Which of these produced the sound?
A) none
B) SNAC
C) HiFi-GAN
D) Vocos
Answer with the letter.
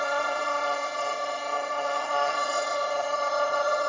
C